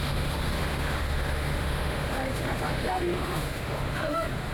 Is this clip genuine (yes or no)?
no